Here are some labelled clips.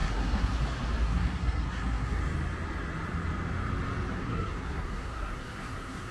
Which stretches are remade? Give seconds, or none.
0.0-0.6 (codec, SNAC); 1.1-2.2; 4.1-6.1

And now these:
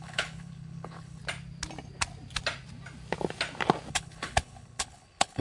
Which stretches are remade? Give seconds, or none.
0.0-1.2 (codec, HILCodec); 3.9-5.4

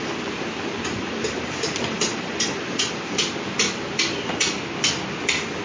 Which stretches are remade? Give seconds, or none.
0.0-2.8 (vocoder, BigVGAN v2)

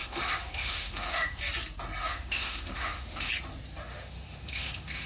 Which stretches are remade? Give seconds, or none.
0.0-1.4 (autoencoder, DAC-VAE); 2.0-3.3; 3.9-5.1